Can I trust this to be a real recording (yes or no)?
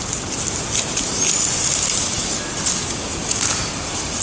yes